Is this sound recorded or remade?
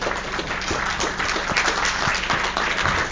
recorded